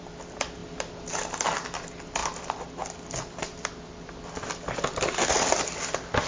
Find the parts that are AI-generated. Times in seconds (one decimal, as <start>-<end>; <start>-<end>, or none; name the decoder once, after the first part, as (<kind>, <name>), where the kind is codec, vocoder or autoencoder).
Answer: none